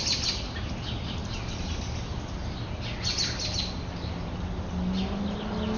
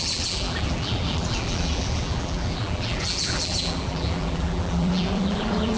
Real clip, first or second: first